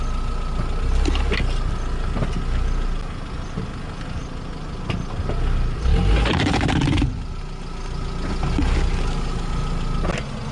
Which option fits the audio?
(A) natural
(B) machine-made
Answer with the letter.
A